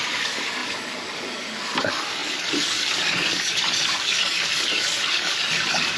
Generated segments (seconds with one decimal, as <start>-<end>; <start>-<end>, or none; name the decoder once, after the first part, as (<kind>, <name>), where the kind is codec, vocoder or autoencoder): 0.0-6.0 (codec, DAC)